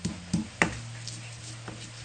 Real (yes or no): yes